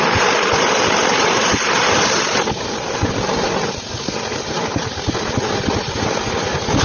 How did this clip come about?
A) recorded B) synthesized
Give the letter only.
A